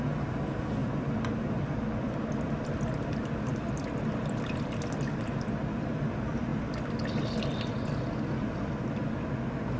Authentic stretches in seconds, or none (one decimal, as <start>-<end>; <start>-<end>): 0.0-9.8